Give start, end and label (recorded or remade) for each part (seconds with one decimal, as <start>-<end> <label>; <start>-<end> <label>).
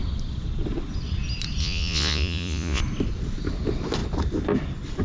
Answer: 0.0-1.6 recorded; 1.6-2.8 remade; 2.8-5.0 recorded